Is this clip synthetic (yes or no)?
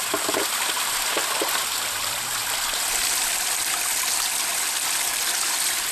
no